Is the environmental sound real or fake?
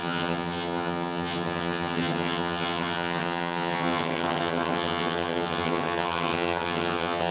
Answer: fake